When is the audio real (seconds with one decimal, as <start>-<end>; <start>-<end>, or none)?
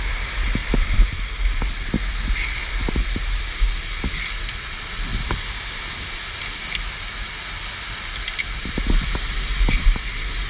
0.0-10.5